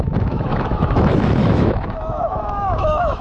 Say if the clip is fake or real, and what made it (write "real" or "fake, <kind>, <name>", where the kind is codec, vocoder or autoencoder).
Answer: fake, autoencoder, DAC-VAE